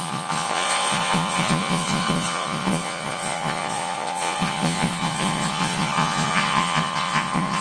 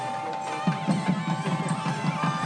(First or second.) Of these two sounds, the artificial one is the first